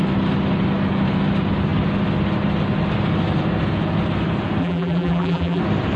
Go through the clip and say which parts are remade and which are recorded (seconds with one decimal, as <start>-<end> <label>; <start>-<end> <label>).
0.0-4.6 recorded; 4.6-5.6 remade; 5.6-6.0 recorded